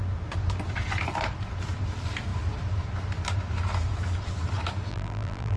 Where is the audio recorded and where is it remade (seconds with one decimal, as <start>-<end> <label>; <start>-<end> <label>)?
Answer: 0.0-4.9 recorded; 4.9-5.6 remade